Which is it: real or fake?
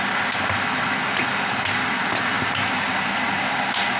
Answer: real